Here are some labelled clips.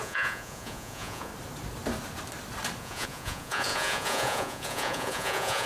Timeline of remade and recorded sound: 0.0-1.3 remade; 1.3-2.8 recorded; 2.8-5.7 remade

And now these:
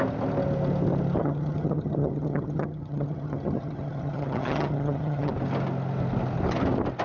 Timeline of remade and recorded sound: 0.0-1.2 recorded; 1.2-5.3 remade; 5.3-7.0 recorded

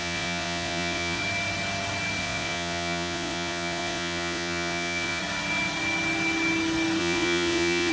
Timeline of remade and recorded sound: 0.0-1.2 remade; 1.2-2.2 recorded; 2.2-5.2 remade; 5.2-7.0 recorded; 7.0-7.9 remade

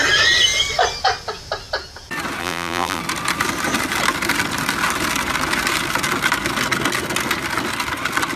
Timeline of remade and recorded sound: 0.0-2.4 recorded; 2.4-3.0 remade; 3.0-8.4 recorded

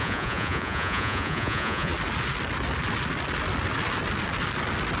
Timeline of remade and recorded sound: 0.0-1.9 remade; 1.9-5.0 recorded